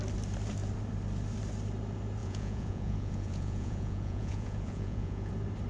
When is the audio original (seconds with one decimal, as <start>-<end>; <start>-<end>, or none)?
0.0-2.2; 5.3-5.7